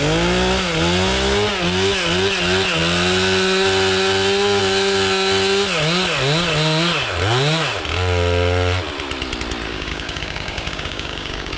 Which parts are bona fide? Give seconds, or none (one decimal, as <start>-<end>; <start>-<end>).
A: 0.0-9.7

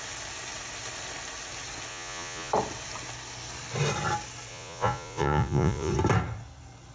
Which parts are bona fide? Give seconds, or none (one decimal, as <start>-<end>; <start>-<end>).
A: 0.0-1.9; 2.5-4.5; 5.9-6.9

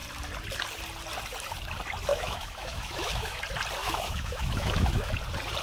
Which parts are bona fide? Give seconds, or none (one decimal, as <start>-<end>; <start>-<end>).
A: 0.0-2.1; 3.4-3.8; 5.1-5.6

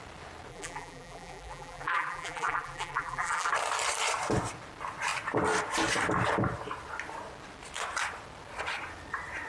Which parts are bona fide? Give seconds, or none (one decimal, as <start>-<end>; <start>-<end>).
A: 0.0-0.5; 3.5-9.5

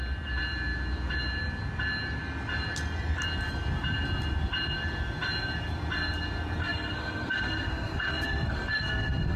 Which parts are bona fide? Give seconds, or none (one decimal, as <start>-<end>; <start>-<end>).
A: 0.0-6.6

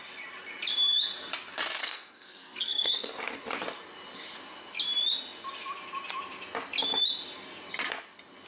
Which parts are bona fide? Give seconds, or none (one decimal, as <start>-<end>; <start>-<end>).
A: 0.0-1.8; 3.1-8.5